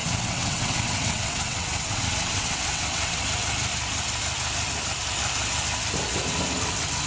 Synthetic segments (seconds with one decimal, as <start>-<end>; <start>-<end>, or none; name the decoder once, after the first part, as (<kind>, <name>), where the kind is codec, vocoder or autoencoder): 0.0-3.2 (vocoder, WaveNeXt)